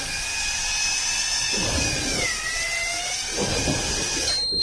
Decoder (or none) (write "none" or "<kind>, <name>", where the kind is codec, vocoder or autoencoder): none